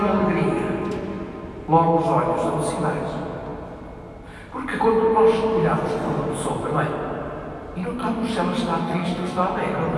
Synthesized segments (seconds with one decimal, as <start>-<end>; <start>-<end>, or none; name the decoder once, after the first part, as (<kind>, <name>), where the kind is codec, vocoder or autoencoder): 8.8-9.4 (codec, SNAC)